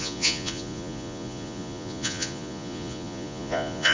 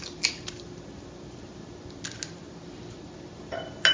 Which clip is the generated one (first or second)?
first